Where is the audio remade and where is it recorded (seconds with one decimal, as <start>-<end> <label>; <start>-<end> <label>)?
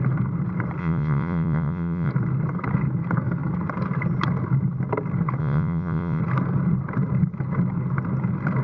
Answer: 0.0-0.8 recorded; 0.8-2.1 remade; 2.1-5.4 recorded; 5.4-6.2 remade; 6.2-8.6 recorded